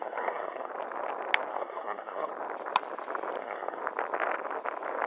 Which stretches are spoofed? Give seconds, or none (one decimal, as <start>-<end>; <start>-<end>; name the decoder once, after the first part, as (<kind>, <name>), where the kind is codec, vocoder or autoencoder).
0.0-0.7 (codec, SNAC); 1.5-2.3; 3.4-3.8